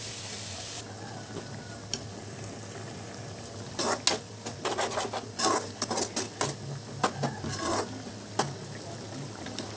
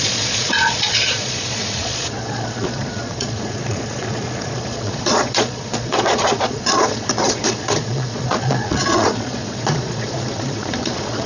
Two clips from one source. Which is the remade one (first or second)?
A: second